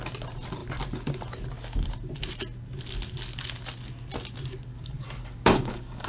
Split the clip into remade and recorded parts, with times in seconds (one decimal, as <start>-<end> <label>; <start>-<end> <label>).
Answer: 0.0-4.7 recorded; 4.7-6.1 remade